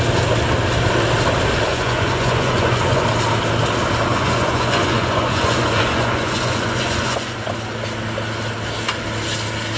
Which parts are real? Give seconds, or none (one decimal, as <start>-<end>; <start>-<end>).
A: 0.0-1.7; 3.0-4.1; 7.5-9.8